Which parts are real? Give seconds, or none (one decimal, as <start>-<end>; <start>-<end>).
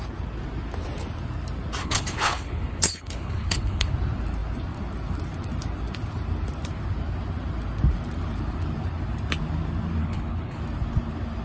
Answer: 0.0-1.8; 3.9-10.0; 10.6-11.4